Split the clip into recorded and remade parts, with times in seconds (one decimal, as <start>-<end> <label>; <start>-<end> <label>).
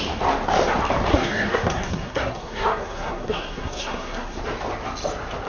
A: 0.0-1.1 recorded; 1.1-4.4 remade; 4.4-5.5 recorded